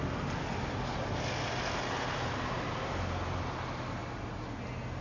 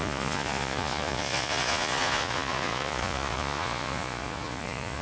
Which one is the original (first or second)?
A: first